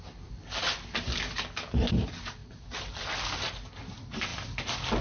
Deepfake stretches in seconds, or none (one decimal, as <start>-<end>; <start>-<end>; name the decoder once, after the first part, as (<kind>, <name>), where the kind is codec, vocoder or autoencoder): 2.4-3.0 (vocoder, BigVGAN v2)